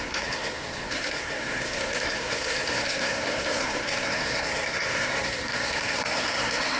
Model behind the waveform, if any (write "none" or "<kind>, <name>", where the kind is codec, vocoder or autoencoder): codec, SNAC